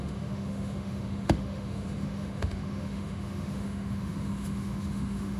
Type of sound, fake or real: fake